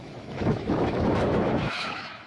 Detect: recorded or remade remade